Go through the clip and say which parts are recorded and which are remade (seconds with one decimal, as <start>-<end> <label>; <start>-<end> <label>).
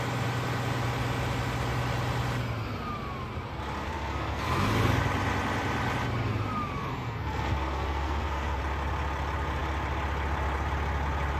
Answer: 0.0-3.8 recorded; 3.8-4.7 remade; 4.7-6.8 recorded; 6.8-8.6 remade; 8.6-11.4 recorded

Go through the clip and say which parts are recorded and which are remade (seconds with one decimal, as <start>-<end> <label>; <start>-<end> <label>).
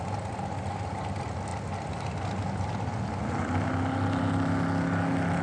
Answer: 0.0-5.4 recorded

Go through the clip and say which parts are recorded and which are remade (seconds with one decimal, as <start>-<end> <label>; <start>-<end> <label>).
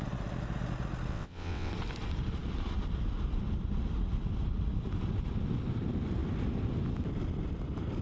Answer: 0.0-1.1 recorded; 1.1-1.7 remade; 1.7-8.0 recorded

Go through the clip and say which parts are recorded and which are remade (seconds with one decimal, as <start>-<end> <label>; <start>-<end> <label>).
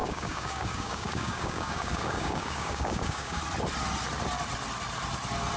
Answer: 0.0-3.4 remade; 3.4-5.6 recorded